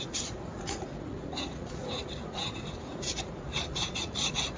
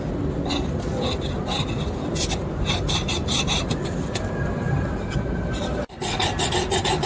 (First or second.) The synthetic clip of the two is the first